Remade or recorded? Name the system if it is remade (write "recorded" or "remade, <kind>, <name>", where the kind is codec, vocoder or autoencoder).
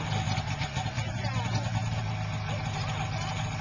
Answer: recorded